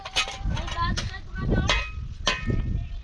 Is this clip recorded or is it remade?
recorded